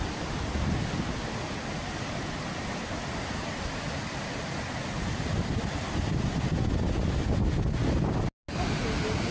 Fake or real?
real